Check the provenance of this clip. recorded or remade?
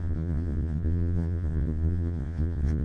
remade